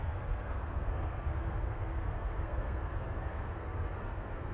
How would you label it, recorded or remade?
remade